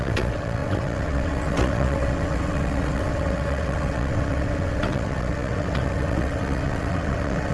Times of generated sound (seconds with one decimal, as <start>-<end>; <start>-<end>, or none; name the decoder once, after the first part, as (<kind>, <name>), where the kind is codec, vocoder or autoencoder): 0.0-7.5 (vocoder, WaveNeXt)